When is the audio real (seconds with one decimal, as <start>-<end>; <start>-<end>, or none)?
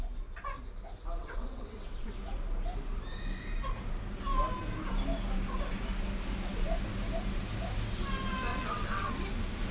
0.0-1.2; 2.2-8.5; 9.1-9.7